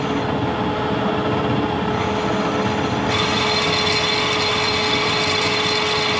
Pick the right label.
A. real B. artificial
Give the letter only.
A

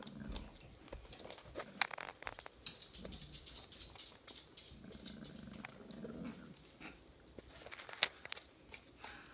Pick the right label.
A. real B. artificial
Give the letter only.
A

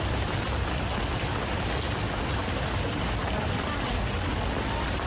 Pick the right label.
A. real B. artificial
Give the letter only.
A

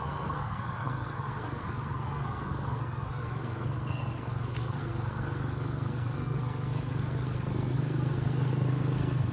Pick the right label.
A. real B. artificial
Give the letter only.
B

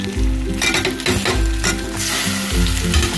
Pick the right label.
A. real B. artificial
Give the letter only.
A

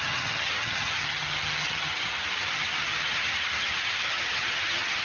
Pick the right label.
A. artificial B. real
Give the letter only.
A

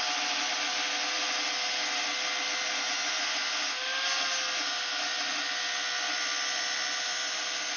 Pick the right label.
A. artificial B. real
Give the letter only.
B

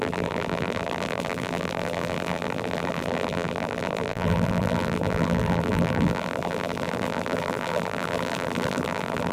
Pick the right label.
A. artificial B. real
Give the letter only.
A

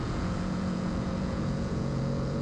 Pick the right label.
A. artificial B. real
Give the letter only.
A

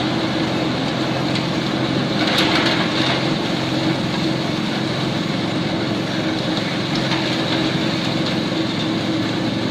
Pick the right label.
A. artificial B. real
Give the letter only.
B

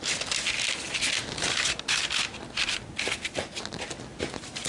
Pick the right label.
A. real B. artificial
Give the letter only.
A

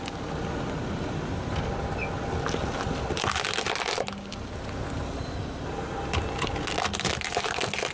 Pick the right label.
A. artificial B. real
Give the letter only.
B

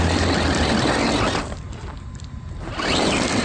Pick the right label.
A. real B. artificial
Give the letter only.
A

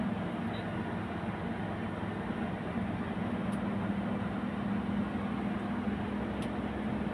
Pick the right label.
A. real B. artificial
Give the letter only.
A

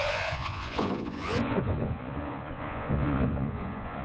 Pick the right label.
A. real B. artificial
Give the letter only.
B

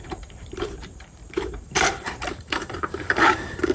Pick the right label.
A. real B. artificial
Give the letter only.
B